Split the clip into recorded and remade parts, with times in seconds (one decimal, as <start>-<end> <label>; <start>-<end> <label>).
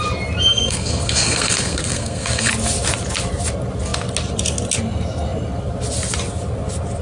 0.0-0.5 recorded; 0.5-2.5 remade; 2.5-7.0 recorded